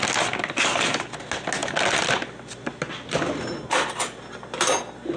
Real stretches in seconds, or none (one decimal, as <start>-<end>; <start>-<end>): 0.0-5.2